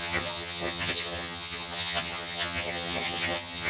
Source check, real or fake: fake